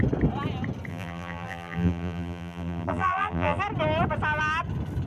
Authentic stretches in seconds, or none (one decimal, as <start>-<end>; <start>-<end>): 0.0-0.9; 3.6-5.1